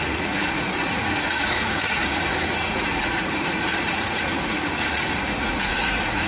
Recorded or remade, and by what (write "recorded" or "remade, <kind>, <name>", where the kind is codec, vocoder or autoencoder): remade, vocoder, Vocos